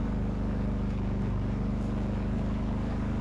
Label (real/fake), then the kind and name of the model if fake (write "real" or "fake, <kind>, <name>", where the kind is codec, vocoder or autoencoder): fake, codec, DAC